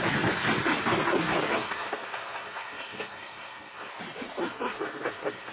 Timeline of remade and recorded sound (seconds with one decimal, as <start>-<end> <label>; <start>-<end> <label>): 0.0-1.2 recorded; 1.2-3.9 remade; 3.9-4.4 recorded; 4.4-5.5 remade